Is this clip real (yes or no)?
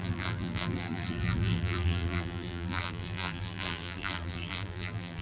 no